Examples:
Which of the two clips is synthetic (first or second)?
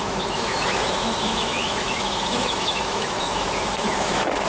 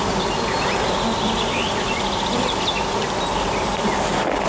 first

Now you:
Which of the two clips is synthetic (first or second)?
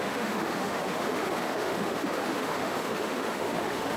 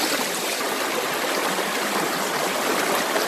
first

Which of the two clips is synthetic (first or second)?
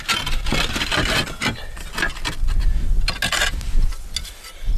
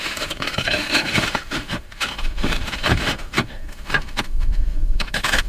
second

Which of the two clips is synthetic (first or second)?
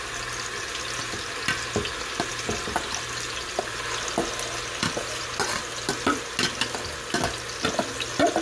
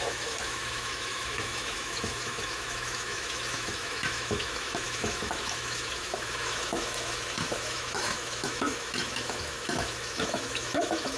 second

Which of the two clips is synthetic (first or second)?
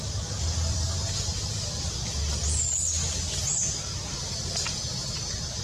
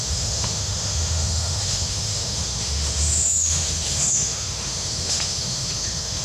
second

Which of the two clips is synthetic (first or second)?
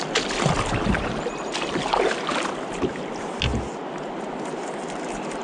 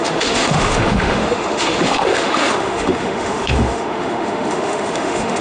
second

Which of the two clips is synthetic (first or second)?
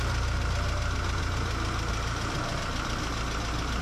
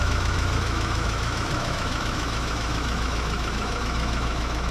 second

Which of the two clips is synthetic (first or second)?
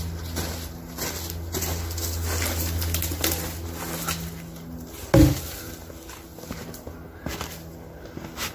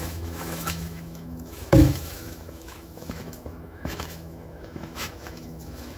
second